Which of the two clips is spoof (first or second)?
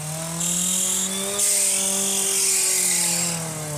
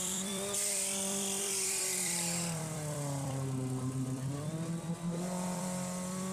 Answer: second